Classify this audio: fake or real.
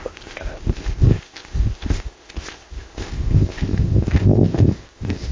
fake